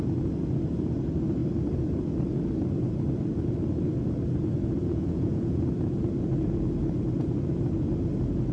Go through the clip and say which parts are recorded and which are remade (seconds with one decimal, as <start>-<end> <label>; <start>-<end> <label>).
0.0-4.8 recorded; 4.8-5.6 remade; 5.6-8.5 recorded